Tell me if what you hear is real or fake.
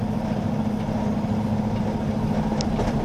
real